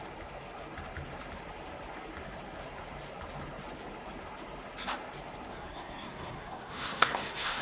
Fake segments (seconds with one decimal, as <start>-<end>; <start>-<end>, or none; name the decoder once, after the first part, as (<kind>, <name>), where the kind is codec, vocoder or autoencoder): 5.5-7.6 (codec, SNAC)